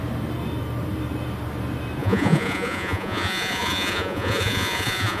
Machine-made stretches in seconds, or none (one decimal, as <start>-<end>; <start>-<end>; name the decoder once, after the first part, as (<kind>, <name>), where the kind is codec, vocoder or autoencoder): 2.0-5.2 (vocoder, Vocos)